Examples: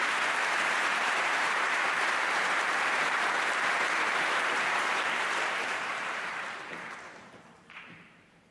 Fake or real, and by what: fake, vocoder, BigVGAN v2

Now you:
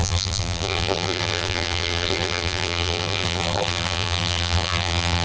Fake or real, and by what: fake, vocoder, BigVGAN v2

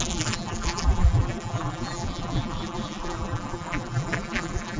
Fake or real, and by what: fake, vocoder, BigVGAN v2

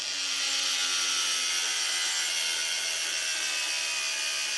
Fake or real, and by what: real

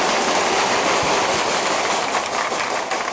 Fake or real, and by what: real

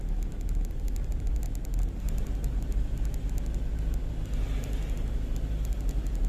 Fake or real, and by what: real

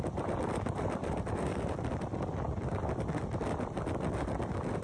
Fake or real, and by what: fake, vocoder, BigVGAN v2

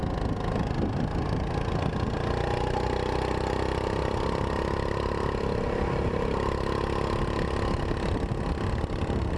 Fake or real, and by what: real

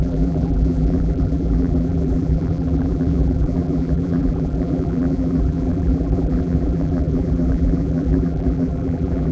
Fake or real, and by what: fake, vocoder, BigVGAN v2